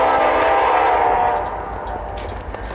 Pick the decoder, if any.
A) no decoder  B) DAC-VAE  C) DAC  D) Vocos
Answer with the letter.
A